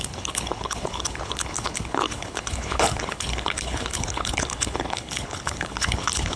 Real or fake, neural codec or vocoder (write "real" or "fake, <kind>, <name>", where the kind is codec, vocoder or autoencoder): fake, codec, HILCodec